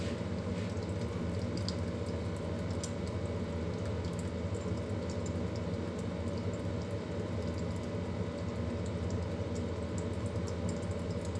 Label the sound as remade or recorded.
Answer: recorded